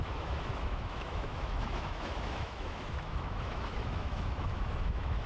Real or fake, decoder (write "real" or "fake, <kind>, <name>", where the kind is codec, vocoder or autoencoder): fake, autoencoder, DAC-VAE